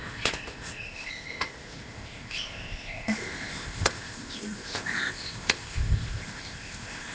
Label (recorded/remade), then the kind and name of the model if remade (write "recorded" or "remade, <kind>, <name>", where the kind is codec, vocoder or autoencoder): remade, codec, ZipCodec